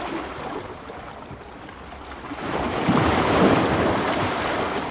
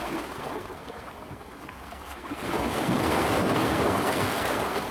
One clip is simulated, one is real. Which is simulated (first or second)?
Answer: second